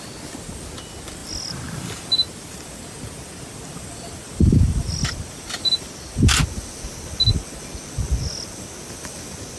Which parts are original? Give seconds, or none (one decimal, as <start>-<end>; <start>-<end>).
0.0-1.2; 6.0-9.6